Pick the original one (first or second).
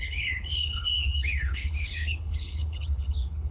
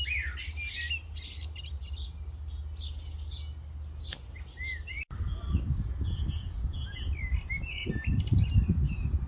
second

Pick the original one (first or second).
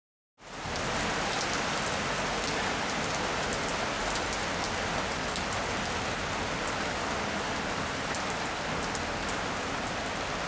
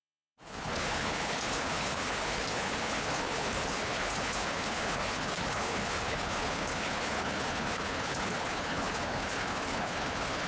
first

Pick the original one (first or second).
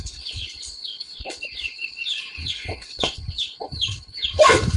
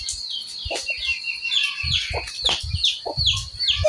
second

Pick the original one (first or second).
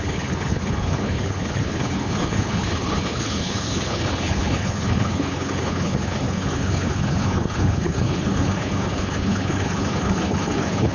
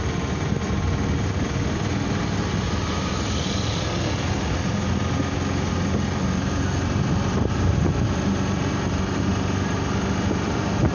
second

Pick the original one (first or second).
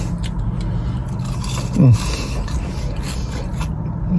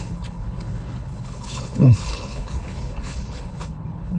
first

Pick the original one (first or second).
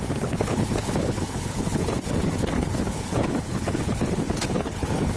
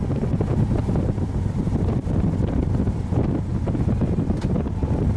second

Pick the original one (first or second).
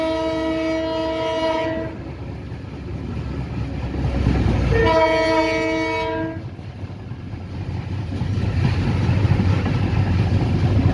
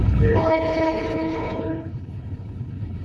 first